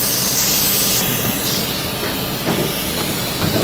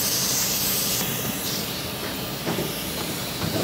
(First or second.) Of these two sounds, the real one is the first